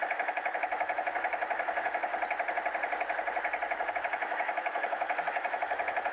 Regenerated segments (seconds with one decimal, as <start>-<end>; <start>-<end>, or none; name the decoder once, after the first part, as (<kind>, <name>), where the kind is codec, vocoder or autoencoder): 0.0-2.1 (autoencoder, DAC-VAE); 3.9-6.1